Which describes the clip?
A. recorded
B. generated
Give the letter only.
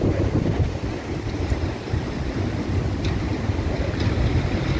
A